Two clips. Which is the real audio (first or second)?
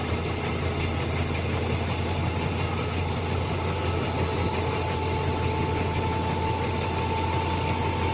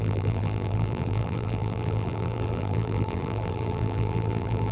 first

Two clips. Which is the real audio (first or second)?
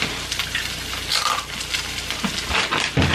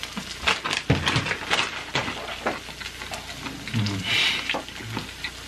second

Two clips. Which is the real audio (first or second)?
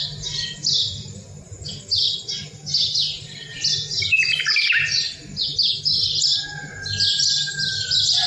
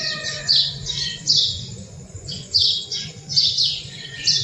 first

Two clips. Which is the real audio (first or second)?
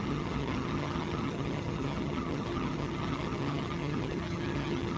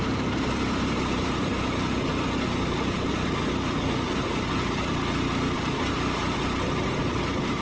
second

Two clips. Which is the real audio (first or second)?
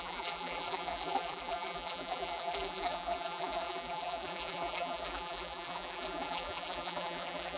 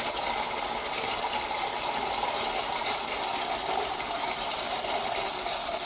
second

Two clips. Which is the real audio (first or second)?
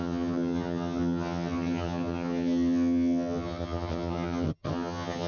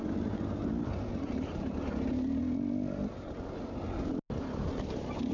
second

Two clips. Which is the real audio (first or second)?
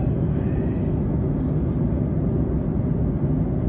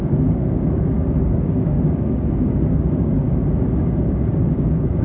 first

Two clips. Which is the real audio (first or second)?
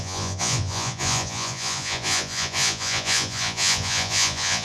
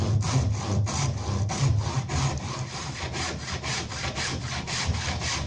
second